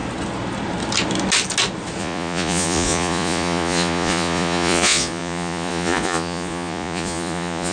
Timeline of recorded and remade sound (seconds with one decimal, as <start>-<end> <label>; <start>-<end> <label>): 0.0-2.0 recorded; 2.0-7.7 remade